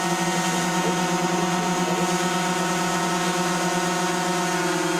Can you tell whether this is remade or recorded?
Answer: recorded